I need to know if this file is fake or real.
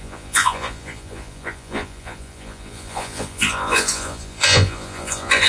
fake